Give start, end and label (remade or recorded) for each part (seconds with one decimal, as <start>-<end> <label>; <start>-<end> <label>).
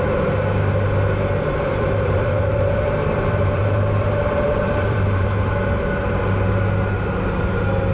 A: 0.0-1.7 recorded; 1.7-5.5 remade; 5.5-7.9 recorded